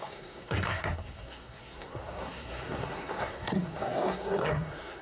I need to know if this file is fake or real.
fake